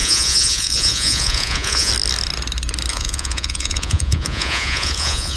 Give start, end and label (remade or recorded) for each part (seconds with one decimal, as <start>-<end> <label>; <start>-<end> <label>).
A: 0.0-1.9 remade; 1.9-2.9 recorded; 2.9-5.4 remade